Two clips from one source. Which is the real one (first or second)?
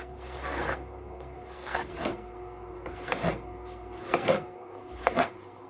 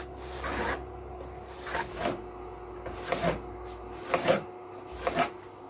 second